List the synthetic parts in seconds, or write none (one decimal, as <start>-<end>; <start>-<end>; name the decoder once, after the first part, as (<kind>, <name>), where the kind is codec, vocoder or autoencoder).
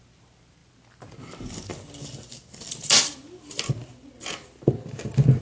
none